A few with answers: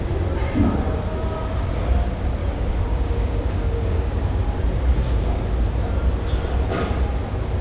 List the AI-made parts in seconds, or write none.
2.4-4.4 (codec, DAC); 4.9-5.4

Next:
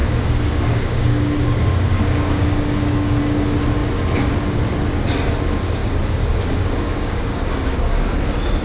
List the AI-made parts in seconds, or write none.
0.0-3.2 (codec, DAC); 5.8-8.1

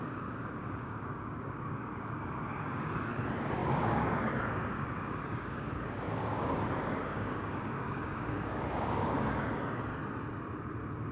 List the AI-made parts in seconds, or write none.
0.0-9.9 (codec, DAC)

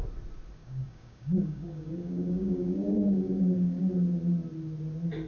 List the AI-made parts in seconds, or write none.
0.6-3.8 (codec, DAC)

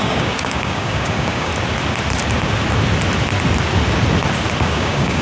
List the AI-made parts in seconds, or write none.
0.0-1.5 (codec, DAC); 4.6-5.2

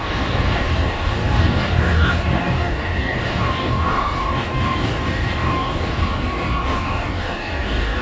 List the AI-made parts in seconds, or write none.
0.0-8.0 (codec, DAC)

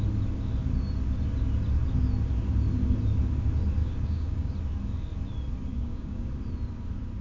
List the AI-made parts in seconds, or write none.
3.8-4.5 (codec, DAC); 5.7-6.3